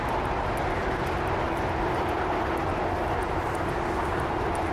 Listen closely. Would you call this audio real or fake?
real